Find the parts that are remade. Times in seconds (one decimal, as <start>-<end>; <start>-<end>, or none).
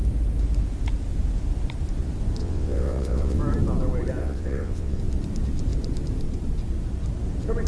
2.4-3.4; 4.2-5.0